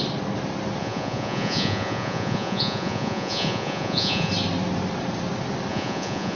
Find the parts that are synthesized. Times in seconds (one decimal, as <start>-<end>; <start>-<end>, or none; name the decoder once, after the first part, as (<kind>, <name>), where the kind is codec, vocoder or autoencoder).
0.8-4.3 (vocoder, Vocos); 5.7-6.4